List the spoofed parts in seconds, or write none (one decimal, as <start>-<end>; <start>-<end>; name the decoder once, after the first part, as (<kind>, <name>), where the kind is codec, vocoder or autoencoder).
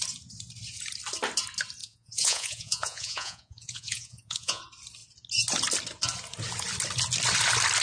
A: 1.8-4.6 (vocoder, Vocos)